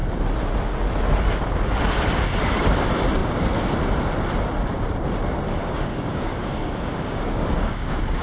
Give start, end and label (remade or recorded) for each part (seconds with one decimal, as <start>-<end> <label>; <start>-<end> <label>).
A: 0.0-5.6 recorded; 5.6-8.2 remade